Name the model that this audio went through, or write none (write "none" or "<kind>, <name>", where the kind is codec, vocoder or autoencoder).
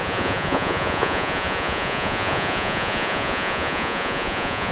vocoder, Vocos